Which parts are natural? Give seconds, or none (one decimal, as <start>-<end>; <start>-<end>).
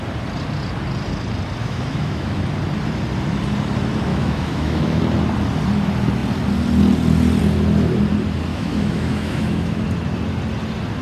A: 0.0-1.6; 2.4-4.1; 5.0-8.5; 9.8-11.0